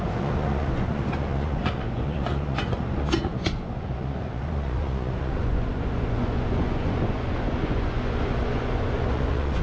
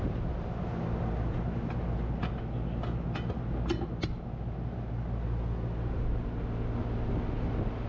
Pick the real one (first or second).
second